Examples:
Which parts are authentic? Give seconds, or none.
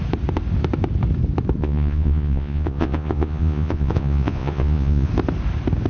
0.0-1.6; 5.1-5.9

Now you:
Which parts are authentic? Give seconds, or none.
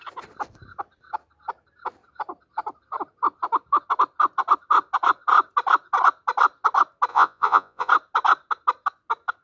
0.0-7.1; 7.9-9.4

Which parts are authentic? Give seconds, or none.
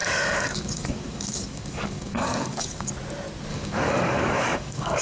2.9-3.5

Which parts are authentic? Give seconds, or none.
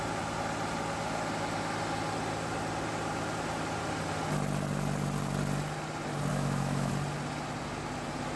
0.0-6.3; 6.9-8.4